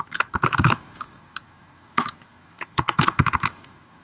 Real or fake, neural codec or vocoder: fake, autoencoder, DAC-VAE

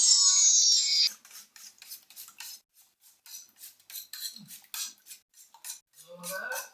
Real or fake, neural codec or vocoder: real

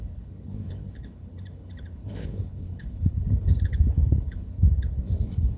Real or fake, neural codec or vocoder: fake, codec, HILCodec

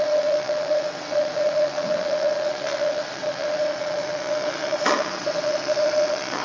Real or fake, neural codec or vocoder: fake, vocoder, WaveNeXt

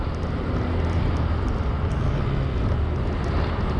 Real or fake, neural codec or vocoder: real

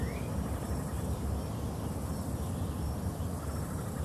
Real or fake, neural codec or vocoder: real